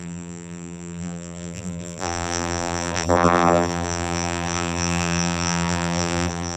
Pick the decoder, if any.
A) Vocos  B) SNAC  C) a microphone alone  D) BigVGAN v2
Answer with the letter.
D